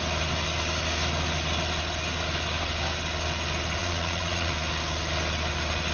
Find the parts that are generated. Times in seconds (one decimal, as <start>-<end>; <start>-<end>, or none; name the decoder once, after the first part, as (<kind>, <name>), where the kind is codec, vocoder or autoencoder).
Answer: 3.8-4.5 (vocoder, Vocos)